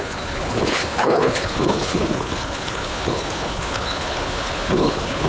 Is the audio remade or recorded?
remade